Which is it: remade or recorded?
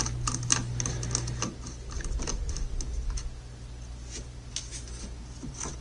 recorded